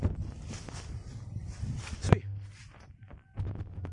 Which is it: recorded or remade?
recorded